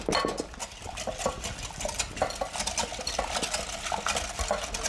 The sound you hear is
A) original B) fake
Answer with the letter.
A